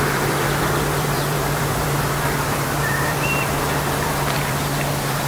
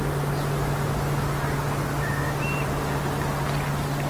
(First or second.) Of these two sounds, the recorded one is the second